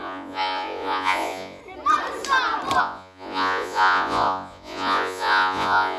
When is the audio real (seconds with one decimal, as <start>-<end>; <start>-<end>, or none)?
1.6-2.8